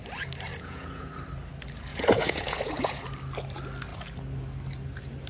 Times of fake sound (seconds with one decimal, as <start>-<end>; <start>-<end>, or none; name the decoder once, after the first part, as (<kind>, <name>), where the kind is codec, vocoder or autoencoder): 0.5-1.1 (vocoder, Vocos); 1.9-3.0